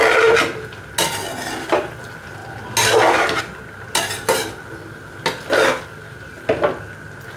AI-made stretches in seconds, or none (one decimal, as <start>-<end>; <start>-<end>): none